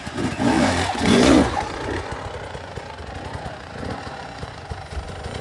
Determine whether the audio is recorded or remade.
remade